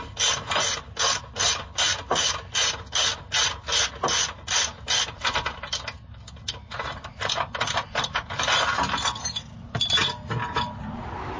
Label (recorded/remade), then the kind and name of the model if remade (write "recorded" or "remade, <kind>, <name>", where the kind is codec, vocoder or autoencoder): recorded